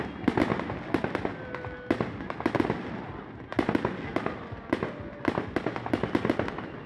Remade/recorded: recorded